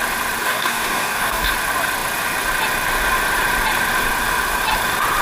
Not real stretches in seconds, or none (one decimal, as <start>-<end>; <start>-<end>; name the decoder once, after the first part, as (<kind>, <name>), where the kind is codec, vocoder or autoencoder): 0.4-1.5 (codec, DAC)